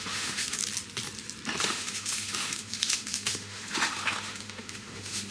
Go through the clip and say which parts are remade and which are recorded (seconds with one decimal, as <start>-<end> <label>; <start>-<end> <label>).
0.0-0.6 remade; 0.6-1.6 recorded; 1.6-5.3 remade